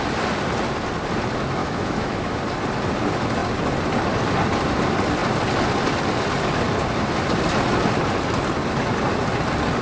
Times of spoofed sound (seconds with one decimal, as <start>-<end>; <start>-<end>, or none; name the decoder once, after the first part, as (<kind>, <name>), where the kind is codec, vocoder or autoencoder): 1.6-2.4 (autoencoder, DAC-VAE)